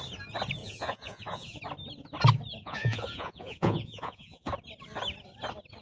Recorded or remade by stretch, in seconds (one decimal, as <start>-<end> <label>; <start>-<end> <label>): 0.0-0.6 recorded; 0.6-1.6 remade; 1.6-2.6 recorded; 2.6-4.5 remade; 4.5-5.8 recorded